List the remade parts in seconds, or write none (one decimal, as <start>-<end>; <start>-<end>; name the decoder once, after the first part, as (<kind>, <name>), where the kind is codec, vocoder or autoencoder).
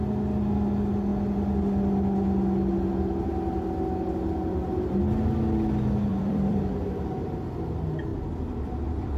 6.1-6.6 (vocoder, BigVGAN v2); 8.1-9.2